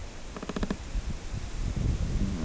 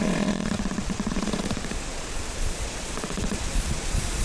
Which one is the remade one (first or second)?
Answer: second